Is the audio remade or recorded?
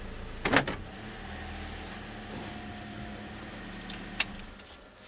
recorded